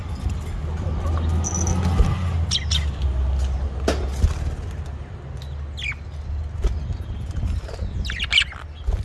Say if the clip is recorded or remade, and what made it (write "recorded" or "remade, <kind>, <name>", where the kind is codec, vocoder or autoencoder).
recorded